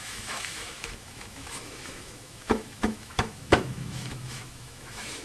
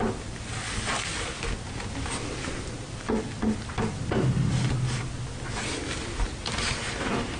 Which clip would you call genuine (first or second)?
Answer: second